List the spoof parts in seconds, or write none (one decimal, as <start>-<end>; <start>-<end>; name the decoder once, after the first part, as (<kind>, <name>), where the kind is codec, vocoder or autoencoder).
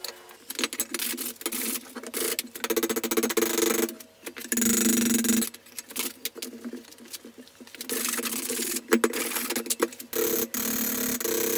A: none